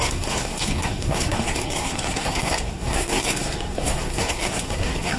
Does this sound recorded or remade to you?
remade